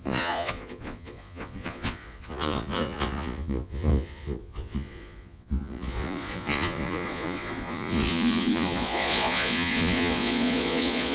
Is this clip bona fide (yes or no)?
no